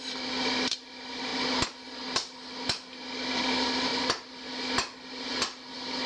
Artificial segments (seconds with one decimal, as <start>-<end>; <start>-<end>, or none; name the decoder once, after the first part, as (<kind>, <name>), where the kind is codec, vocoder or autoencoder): 0.0-1.3 (vocoder, BigVGAN v2); 3.4-3.9; 5.3-6.1